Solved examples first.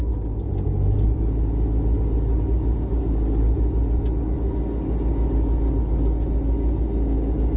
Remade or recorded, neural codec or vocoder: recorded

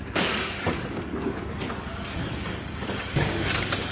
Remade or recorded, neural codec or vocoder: remade, codec, DAC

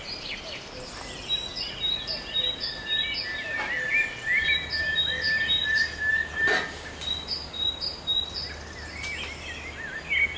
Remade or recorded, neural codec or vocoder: recorded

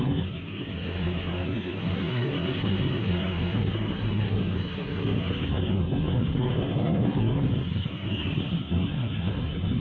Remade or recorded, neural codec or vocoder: remade, codec, SNAC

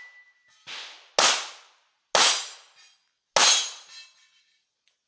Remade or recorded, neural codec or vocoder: recorded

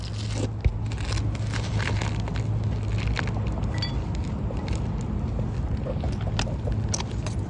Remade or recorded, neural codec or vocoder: recorded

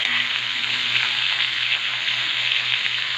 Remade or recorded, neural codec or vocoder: remade, codec, SNAC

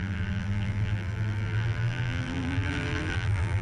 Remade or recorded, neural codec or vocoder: remade, vocoder, BigVGAN v2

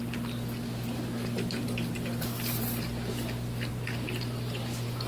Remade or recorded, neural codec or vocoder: recorded